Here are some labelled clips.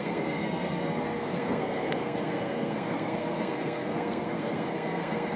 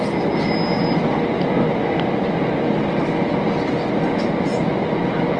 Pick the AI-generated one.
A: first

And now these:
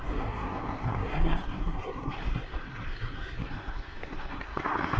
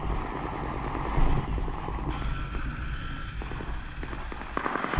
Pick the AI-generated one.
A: first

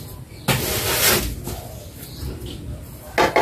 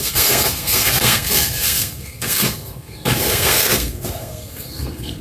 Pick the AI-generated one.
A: second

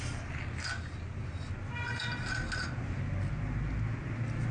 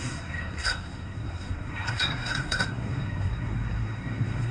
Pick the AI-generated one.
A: second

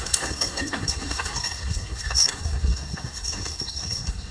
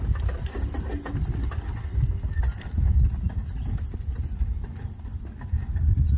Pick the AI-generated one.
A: first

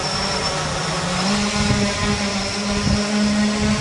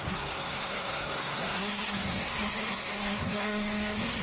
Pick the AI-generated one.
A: second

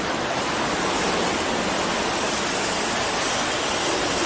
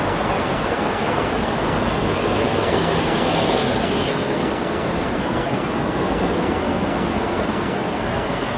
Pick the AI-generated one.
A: second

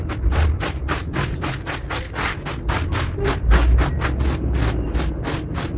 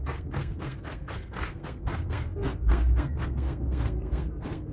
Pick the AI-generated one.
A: second